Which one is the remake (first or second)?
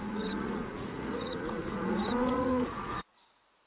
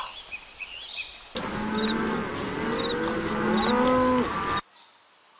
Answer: first